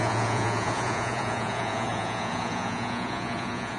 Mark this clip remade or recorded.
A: remade